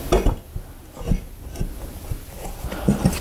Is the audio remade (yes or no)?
no